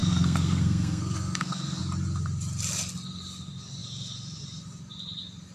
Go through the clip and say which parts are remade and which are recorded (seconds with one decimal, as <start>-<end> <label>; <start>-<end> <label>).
0.0-1.8 remade; 1.8-5.5 recorded